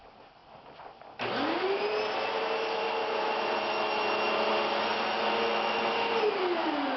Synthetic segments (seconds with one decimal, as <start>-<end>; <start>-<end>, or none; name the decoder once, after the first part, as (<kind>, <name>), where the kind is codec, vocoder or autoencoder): none